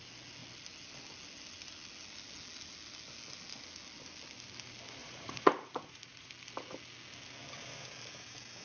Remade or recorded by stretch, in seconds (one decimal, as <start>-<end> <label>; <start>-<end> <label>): 0.0-5.0 recorded; 5.0-6.3 remade; 6.3-8.6 recorded